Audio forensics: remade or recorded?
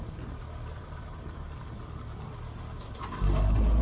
recorded